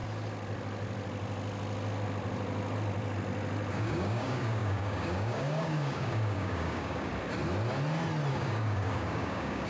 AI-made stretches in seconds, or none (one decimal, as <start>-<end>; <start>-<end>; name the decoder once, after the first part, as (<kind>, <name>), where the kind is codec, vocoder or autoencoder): 3.7-7.1 (codec, DAC); 8.3-9.7